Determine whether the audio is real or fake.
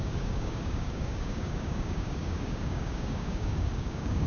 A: fake